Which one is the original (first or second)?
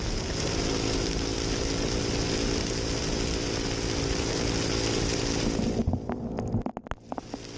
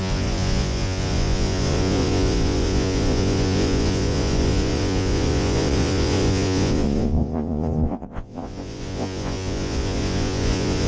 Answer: first